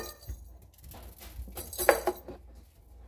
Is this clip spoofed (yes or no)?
no